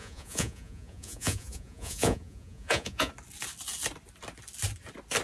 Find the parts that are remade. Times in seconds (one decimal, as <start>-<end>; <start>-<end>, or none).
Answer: 0.0-3.1